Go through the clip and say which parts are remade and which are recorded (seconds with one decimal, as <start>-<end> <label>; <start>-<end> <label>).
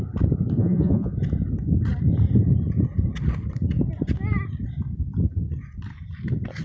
0.0-0.6 recorded; 0.6-1.1 remade; 1.1-6.6 recorded